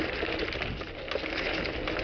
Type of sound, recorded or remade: recorded